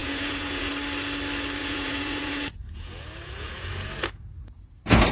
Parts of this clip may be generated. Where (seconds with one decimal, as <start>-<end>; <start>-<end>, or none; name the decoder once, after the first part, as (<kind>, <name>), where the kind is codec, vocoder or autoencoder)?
0.0-0.7 (vocoder, Vocos); 1.6-5.1